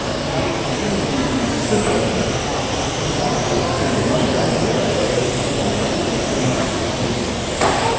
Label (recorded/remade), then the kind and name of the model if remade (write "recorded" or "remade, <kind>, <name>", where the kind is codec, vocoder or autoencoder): recorded